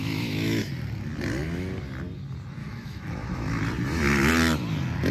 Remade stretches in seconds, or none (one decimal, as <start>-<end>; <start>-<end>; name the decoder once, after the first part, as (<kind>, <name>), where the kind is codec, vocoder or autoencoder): 0.0-0.6 (autoencoder, DAC-VAE); 2.6-3.6